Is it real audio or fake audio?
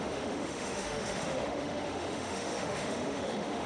fake